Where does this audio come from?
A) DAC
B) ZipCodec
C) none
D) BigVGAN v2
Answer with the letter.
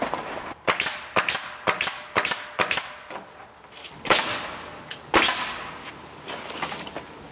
C